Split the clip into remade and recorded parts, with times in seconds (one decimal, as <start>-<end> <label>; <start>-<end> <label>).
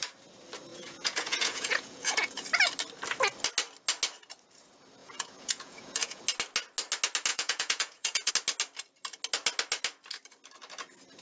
0.0-0.7 recorded; 0.7-2.4 remade; 2.4-5.0 recorded; 5.0-6.2 remade; 6.2-7.3 recorded; 7.3-8.3 remade; 8.3-11.2 recorded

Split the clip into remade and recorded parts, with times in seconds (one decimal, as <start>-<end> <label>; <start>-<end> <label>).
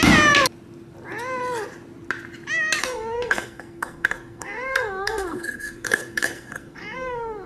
0.0-2.8 recorded; 2.8-7.5 remade